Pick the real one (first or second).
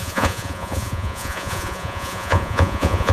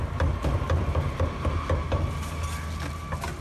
second